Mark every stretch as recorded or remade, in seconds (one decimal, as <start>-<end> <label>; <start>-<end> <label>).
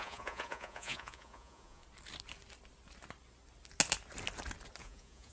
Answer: 0.0-1.8 remade; 1.8-4.8 recorded; 4.8-5.3 remade